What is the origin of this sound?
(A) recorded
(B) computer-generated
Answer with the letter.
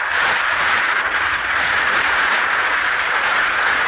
B